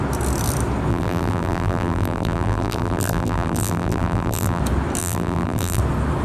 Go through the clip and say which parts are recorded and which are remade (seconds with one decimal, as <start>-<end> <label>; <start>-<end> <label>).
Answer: 0.0-0.9 recorded; 0.9-4.6 remade; 4.6-5.0 recorded; 5.0-5.8 remade; 5.8-6.2 recorded